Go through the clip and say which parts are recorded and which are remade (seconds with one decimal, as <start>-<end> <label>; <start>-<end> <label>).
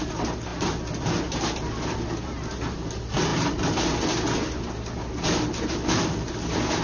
0.0-6.8 recorded